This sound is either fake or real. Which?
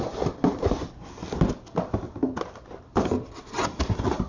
real